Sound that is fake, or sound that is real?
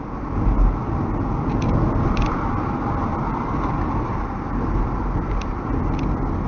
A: real